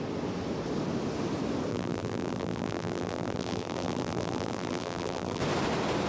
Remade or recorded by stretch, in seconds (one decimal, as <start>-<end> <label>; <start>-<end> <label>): 0.0-1.7 recorded; 1.7-5.4 remade; 5.4-6.1 recorded